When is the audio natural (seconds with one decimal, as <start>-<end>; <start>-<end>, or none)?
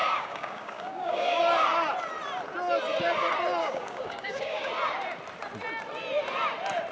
1.4-3.6; 4.7-6.9